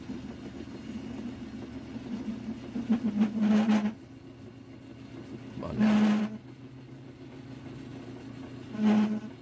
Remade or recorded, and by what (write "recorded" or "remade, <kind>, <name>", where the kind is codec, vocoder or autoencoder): recorded